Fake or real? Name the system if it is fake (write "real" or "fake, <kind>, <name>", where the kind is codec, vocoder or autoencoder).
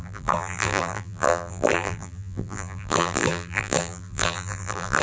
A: fake, vocoder, BigVGAN v2